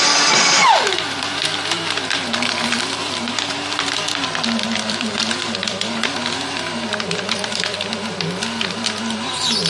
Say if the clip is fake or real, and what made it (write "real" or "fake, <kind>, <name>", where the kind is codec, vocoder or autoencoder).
fake, vocoder, BigVGAN v2